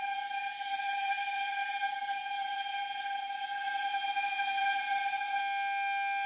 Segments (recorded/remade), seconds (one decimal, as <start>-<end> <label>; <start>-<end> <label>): 0.0-5.4 remade; 5.4-6.3 recorded